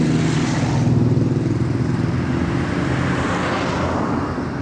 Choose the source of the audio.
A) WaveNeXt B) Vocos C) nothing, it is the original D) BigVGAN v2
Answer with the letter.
C